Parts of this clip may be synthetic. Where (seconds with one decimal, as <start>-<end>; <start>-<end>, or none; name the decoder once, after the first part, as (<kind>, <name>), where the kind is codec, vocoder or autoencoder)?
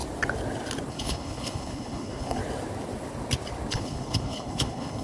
0.9-2.4 (codec, HILCodec); 3.7-5.0